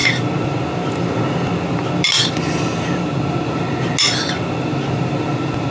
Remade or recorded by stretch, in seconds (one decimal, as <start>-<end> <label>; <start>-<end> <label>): 0.0-5.7 recorded